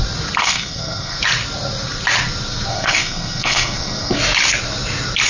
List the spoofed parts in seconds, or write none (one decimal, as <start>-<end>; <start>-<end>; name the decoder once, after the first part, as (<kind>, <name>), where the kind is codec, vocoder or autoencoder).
0.4-1.2 (codec, SNAC); 2.7-4.2